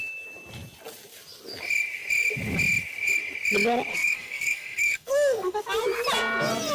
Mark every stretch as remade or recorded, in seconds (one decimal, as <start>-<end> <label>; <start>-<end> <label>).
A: 0.0-3.9 recorded; 3.9-5.6 remade; 5.6-6.7 recorded